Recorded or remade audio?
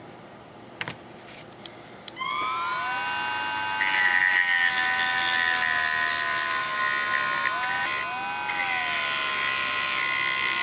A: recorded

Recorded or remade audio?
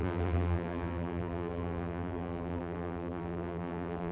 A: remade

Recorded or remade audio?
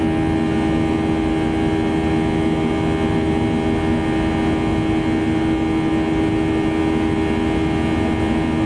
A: recorded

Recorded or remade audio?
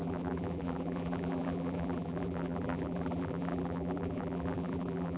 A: remade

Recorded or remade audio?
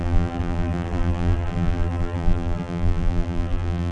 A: remade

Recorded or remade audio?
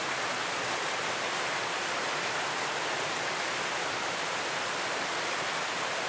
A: recorded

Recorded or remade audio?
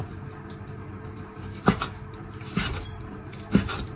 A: recorded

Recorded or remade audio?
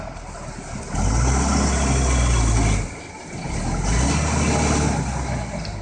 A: recorded